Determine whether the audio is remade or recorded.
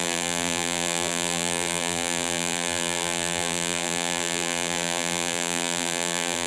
remade